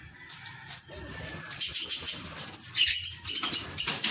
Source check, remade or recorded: recorded